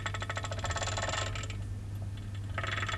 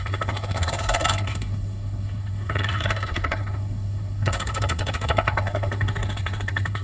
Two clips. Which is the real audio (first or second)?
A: first